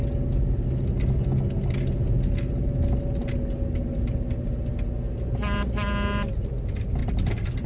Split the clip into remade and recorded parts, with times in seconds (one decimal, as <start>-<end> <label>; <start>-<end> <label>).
0.0-7.7 recorded